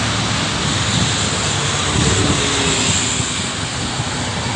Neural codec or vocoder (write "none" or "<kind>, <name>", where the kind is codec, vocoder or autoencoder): none